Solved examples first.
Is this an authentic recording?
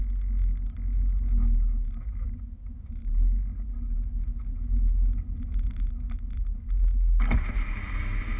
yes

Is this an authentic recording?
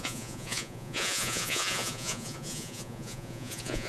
no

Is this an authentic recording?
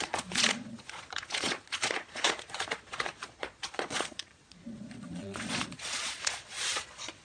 no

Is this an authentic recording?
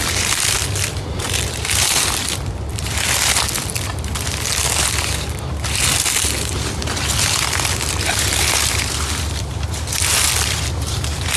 no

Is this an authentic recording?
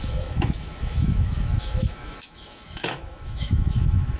no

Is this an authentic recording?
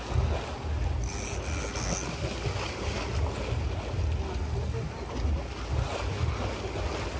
yes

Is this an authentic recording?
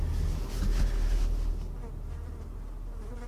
yes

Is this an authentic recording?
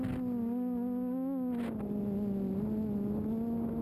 yes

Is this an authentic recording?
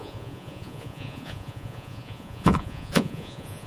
no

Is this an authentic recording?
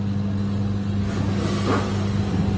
yes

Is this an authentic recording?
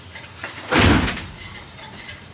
yes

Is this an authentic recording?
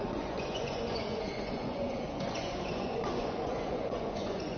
no